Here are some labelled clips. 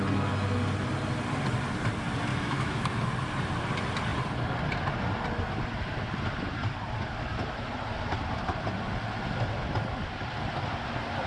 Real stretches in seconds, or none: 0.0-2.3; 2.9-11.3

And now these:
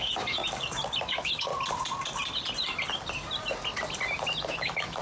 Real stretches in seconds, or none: 0.4-1.0; 1.5-4.5

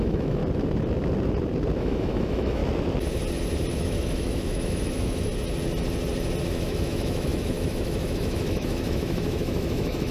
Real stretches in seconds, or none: 0.4-1.8; 2.6-3.7; 5.3-6.4

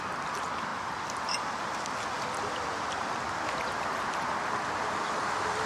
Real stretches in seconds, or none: 0.0-5.7

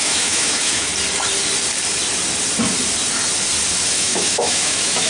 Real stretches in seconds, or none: 0.9-4.0